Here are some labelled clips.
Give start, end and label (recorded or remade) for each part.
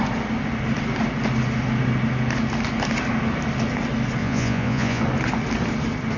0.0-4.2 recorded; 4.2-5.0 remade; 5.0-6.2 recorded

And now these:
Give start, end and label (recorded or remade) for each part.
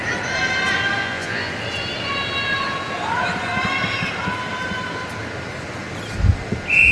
0.0-1.0 recorded; 1.0-1.5 remade; 1.5-6.9 recorded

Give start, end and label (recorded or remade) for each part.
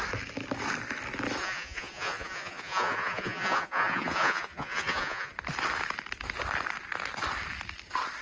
0.0-1.4 recorded; 1.4-5.3 remade; 5.3-8.2 recorded